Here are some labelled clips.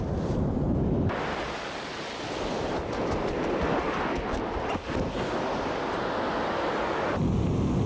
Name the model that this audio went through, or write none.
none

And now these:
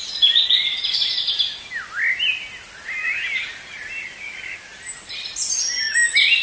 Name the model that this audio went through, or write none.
none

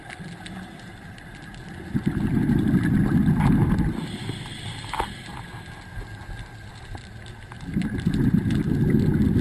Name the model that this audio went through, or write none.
none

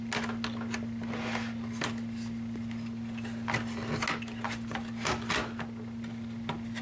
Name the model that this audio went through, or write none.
none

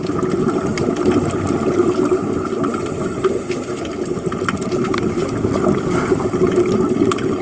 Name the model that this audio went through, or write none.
none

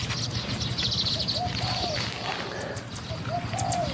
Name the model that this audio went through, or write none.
none